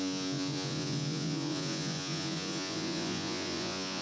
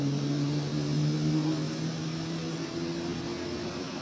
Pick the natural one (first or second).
second